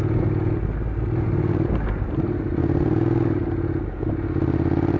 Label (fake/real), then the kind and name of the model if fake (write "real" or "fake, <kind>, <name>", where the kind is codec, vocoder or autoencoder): real